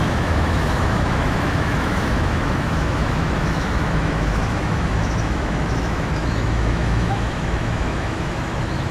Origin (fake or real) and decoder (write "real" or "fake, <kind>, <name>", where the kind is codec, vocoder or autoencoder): fake, autoencoder, DAC-VAE